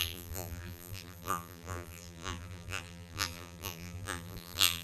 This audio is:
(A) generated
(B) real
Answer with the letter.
A